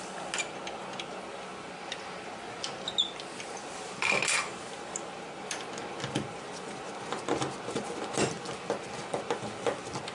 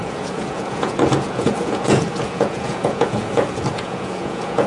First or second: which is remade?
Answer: second